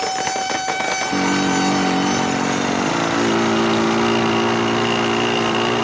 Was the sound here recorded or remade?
recorded